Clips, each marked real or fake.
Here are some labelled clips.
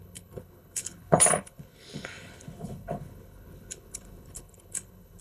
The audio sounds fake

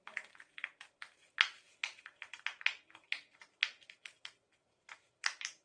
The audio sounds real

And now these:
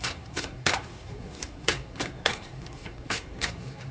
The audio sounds fake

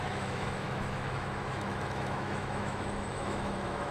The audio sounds fake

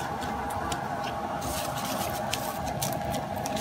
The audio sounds real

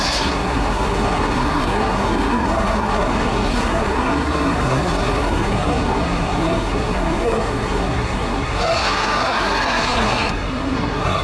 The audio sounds fake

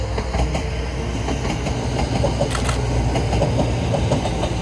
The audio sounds real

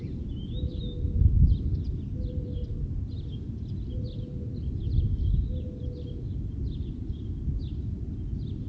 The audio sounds real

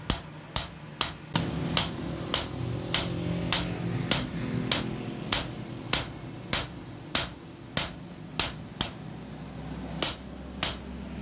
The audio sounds real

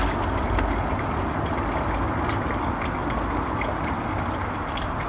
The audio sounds real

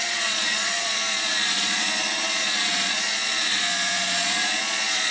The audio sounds fake